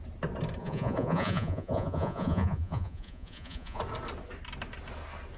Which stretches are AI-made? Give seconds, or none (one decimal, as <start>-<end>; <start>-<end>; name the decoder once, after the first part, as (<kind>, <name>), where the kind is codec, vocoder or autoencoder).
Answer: 0.6-3.8 (vocoder, Vocos)